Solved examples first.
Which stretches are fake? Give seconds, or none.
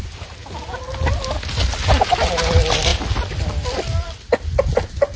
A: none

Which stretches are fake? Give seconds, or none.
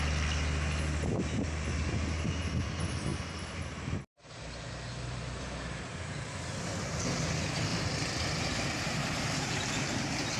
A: 7.7-9.5 (vocoder, BigVGAN v2)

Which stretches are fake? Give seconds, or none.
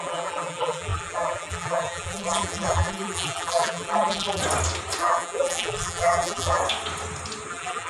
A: 0.0-4.4 (vocoder, BigVGAN v2); 5.0-6.6; 7.5-7.9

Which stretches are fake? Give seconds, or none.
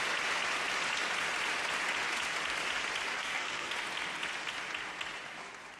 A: 3.2-3.7 (codec, SNAC)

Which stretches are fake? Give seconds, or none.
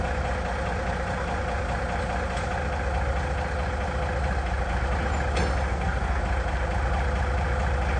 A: 5.7-6.2 (codec, SNAC)